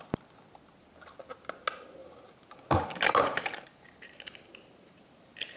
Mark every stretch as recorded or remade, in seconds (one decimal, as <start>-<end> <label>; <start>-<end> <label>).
0.0-2.0 recorded; 2.0-5.6 remade